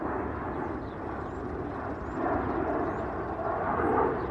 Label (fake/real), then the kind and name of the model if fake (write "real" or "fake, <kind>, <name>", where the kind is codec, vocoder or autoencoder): real